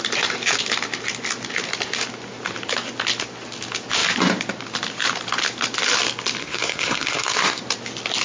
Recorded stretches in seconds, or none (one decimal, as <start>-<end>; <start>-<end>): 0.0-6.4; 7.6-8.2